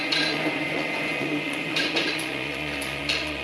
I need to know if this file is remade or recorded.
remade